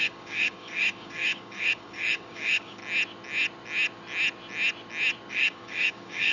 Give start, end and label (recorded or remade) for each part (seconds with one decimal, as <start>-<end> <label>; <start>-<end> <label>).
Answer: 0.0-2.8 remade; 2.8-5.3 recorded; 5.3-6.3 remade